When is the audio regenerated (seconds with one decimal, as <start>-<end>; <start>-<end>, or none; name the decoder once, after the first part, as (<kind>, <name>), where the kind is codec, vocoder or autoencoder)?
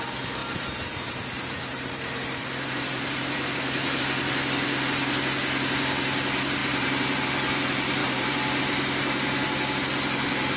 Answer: 0.4-4.0 (vocoder, BigVGAN v2); 6.6-7.2; 8.0-8.6